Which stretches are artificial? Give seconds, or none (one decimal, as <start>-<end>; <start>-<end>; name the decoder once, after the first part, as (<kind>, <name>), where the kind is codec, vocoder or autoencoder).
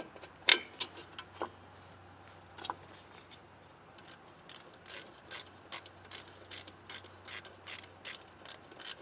none